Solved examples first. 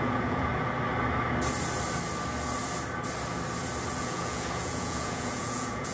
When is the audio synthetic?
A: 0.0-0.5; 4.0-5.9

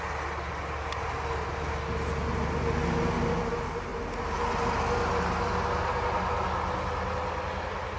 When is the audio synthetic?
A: none

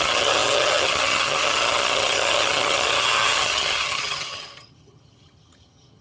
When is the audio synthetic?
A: 0.0-6.0

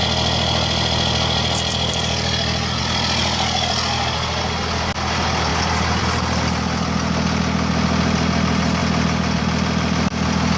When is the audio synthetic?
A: none

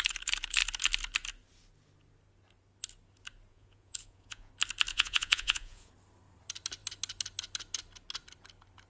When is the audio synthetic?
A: 3.5-4.5; 4.9-5.9

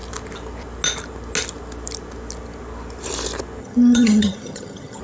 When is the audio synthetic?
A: 3.6-5.0